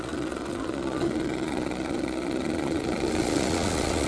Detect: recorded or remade remade